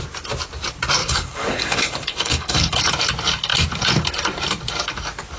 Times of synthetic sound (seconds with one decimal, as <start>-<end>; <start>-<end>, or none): 1.0-2.8